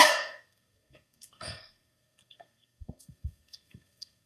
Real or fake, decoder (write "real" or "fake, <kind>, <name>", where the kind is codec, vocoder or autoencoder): fake, codec, SNAC